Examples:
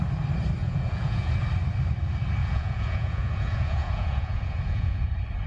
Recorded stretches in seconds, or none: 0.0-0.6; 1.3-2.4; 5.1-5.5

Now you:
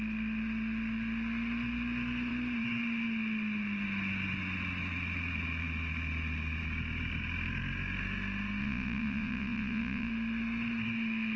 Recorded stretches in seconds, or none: 0.0-8.6; 10.1-11.4

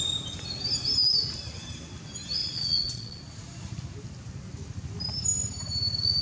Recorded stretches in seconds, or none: 0.0-2.4; 3.2-6.2

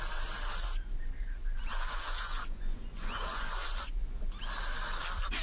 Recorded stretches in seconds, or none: 0.0-1.7; 4.2-5.4

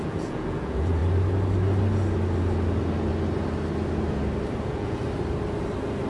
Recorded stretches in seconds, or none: 1.0-4.6; 5.0-6.1

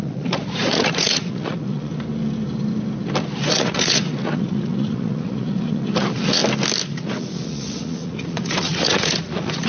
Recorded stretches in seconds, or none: 1.9-3.5; 6.4-6.9

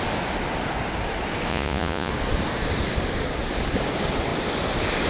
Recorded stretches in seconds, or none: 0.0-1.5; 2.1-5.1

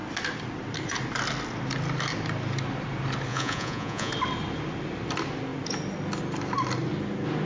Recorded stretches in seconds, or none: 0.0-3.3; 4.1-7.5